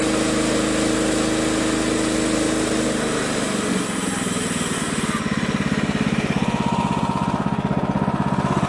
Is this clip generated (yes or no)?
no